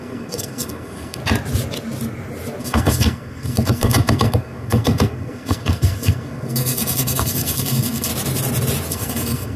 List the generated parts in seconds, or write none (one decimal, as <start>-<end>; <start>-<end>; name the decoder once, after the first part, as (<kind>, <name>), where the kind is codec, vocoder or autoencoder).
0.0-1.2 (codec, SNAC); 2.6-8.1; 8.9-9.6